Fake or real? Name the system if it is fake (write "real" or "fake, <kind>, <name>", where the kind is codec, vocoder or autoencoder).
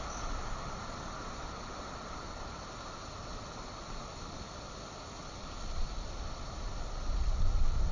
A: real